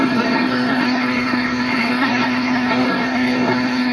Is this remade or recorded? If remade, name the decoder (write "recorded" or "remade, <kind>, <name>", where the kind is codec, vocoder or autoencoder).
remade, codec, SNAC